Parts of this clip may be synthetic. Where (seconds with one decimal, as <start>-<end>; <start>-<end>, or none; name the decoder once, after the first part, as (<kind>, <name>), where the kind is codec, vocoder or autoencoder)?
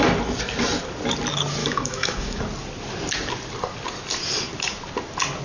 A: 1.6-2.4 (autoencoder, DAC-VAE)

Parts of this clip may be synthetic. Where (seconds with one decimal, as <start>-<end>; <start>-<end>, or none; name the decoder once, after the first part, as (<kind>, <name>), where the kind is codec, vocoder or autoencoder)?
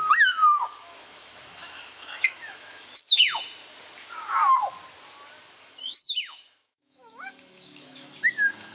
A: 0.0-3.0 (autoencoder, DAC-VAE); 5.6-8.7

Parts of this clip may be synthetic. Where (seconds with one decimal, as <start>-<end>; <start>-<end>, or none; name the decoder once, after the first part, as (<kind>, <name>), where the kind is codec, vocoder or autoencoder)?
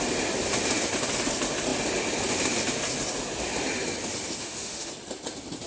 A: 4.4-4.9 (autoencoder, DAC-VAE)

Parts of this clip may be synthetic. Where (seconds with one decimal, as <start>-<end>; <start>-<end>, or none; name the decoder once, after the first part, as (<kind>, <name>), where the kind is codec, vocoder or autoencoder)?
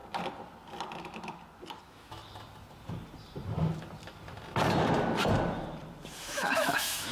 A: 1.8-2.2 (autoencoder, DAC-VAE); 6.2-7.1